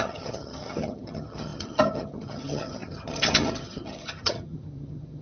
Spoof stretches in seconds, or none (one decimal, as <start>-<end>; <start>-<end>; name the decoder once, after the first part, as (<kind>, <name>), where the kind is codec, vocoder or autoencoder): 0.0-5.2 (vocoder, HiFi-GAN)

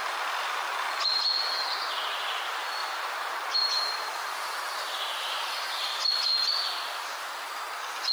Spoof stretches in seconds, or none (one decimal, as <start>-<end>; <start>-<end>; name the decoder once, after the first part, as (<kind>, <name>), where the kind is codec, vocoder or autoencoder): 2.8-5.8 (vocoder, BigVGAN v2)